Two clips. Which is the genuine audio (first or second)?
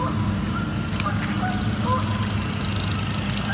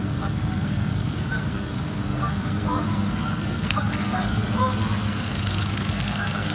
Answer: first